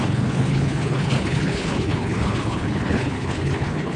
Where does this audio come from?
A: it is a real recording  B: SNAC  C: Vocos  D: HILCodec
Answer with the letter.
D